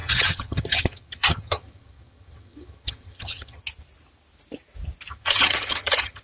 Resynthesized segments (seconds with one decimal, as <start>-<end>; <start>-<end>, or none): 0.0-3.6; 5.1-6.2